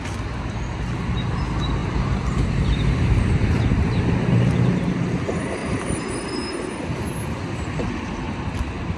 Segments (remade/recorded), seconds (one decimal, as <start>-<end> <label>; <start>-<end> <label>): 0.0-1.8 recorded; 1.8-4.0 remade; 4.0-5.6 recorded; 5.6-6.3 remade; 6.3-9.0 recorded